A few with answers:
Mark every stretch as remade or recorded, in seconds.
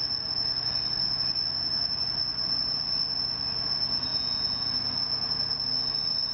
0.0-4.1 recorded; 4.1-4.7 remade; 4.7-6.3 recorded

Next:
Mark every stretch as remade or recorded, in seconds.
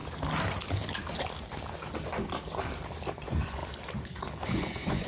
0.0-3.1 recorded; 3.1-3.6 remade; 3.6-4.4 recorded; 4.4-5.1 remade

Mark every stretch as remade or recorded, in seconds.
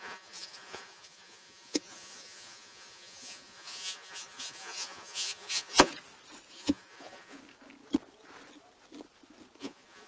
0.0-5.9 remade; 5.9-6.5 recorded; 6.5-7.4 remade; 7.4-9.6 recorded; 9.6-10.1 remade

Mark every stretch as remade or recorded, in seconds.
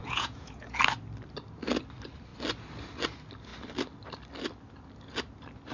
0.0-0.8 remade; 0.8-5.7 recorded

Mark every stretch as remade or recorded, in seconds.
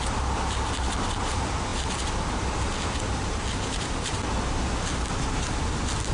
0.0-6.1 recorded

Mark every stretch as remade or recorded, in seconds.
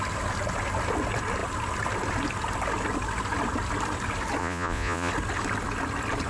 0.0-4.4 recorded; 4.4-5.1 remade; 5.1-6.3 recorded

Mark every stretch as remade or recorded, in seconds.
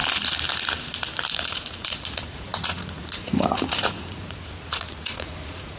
0.0-1.3 recorded; 1.3-5.8 remade